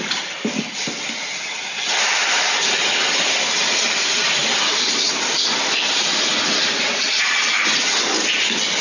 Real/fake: real